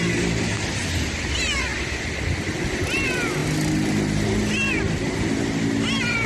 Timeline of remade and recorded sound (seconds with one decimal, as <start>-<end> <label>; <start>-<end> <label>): 0.0-6.3 recorded